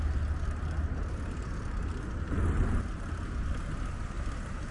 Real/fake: real